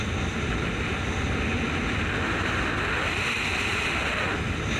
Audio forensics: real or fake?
real